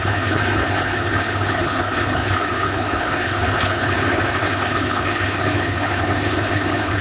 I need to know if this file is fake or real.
fake